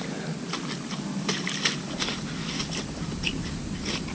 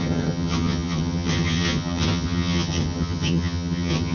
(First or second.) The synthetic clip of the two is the second